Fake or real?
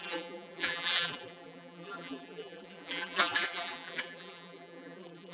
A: fake